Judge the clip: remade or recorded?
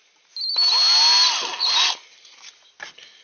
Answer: recorded